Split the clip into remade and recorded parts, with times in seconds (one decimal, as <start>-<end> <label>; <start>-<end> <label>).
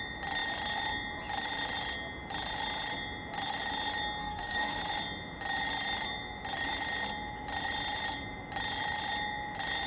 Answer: 0.0-4.2 recorded; 4.2-4.8 remade; 4.8-9.9 recorded